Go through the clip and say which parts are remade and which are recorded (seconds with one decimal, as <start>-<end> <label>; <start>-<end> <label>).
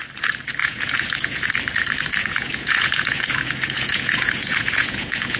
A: 0.0-0.6 recorded; 0.6-1.5 remade; 1.5-2.2 recorded; 2.2-5.4 remade